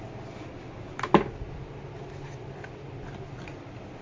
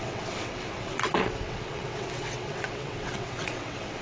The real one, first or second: first